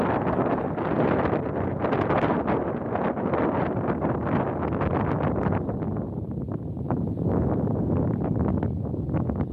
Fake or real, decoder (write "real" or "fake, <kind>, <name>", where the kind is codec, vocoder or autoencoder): real